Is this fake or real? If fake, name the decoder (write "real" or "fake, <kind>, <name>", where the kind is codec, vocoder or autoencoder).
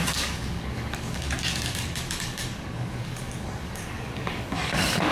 fake, codec, DAC